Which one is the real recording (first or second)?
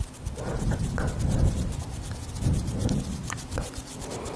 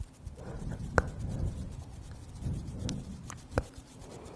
first